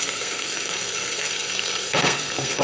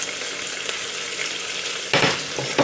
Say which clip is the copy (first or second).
first